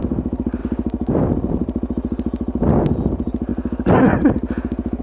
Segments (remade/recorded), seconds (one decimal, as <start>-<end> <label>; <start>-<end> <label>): 0.0-5.0 recorded